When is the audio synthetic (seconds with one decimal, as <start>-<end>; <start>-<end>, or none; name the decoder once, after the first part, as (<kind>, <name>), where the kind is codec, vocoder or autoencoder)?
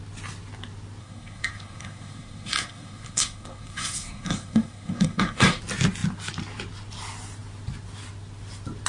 1.0-5.6 (codec, SNAC)